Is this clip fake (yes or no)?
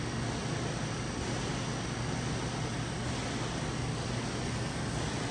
no